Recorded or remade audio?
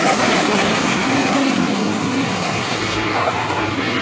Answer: remade